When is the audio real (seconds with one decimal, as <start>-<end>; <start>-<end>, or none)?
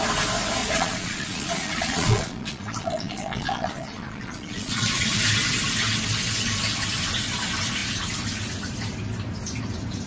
0.0-0.6; 5.2-10.1